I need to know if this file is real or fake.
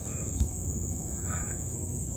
fake